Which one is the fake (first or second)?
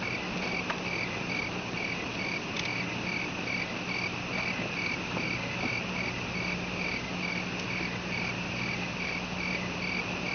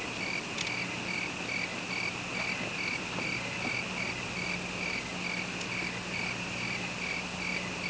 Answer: first